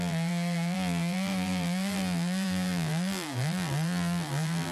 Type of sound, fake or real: fake